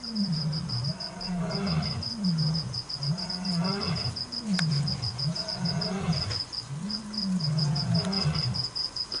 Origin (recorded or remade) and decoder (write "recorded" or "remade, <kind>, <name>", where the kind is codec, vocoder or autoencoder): remade, vocoder, Vocos